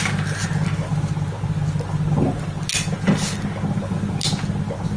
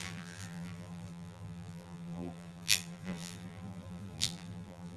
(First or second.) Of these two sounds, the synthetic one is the second